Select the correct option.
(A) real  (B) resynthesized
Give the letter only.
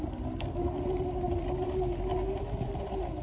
A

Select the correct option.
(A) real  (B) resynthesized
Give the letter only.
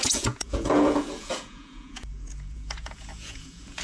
B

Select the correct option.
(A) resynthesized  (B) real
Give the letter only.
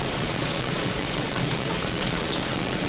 A